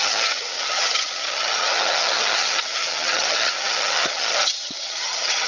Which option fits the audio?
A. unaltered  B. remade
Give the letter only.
B